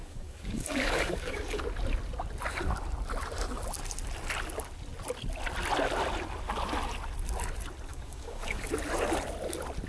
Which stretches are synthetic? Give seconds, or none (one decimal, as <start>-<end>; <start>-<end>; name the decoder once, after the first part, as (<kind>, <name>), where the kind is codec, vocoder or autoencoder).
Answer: 0.0-1.6 (codec, DAC); 7.9-8.7